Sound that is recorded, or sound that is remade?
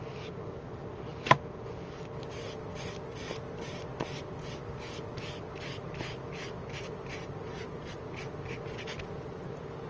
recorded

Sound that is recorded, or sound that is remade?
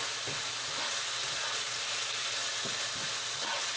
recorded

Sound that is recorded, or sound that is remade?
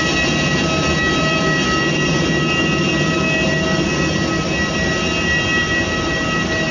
recorded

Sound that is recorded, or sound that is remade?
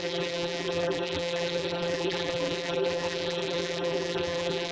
remade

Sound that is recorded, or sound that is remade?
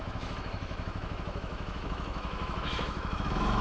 remade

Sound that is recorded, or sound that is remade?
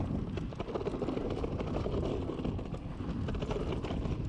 recorded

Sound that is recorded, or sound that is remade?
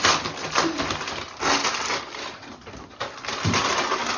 recorded